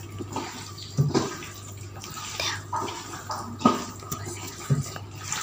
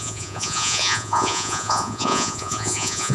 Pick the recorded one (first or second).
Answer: first